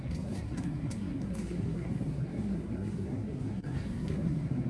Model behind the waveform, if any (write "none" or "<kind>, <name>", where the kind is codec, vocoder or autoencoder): codec, SNAC